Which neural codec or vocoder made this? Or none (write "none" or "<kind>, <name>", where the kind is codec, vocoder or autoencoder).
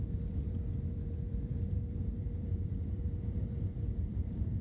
vocoder, BigVGAN v2